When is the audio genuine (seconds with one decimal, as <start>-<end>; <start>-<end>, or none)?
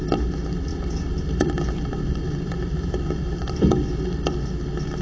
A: 0.0-0.7; 3.7-5.0